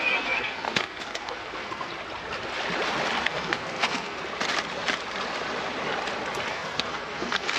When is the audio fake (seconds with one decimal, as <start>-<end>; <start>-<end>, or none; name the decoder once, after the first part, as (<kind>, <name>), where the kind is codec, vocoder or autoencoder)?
0.0-1.9 (codec, SNAC); 3.2-4.2; 6.5-7.6